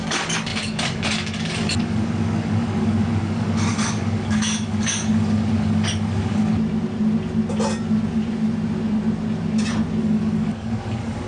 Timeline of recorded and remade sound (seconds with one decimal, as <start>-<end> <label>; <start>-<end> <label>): 0.0-6.5 remade; 6.5-10.0 recorded; 10.0-11.3 remade